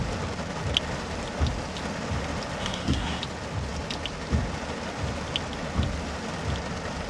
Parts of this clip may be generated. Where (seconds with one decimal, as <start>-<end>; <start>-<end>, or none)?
2.6-3.2